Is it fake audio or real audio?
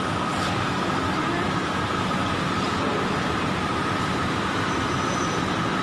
real